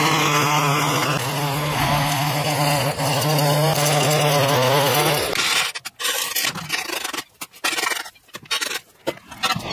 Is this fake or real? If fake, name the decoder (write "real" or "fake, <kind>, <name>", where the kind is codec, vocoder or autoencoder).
real